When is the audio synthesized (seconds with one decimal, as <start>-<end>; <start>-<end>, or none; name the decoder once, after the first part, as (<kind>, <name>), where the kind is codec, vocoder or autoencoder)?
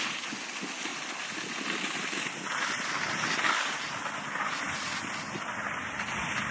none